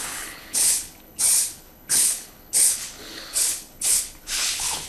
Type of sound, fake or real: fake